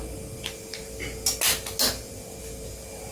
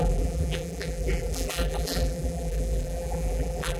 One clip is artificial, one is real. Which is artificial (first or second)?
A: second